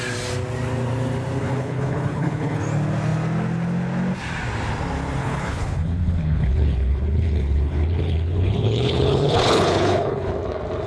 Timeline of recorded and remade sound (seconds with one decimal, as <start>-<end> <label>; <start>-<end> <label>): 0.0-1.4 recorded; 1.4-2.6 remade; 2.6-5.2 recorded; 5.2-10.3 remade; 10.3-10.9 recorded